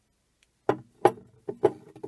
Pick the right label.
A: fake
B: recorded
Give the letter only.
B